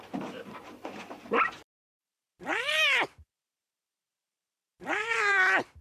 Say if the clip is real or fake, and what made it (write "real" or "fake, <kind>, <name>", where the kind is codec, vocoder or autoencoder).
fake, vocoder, BigVGAN v2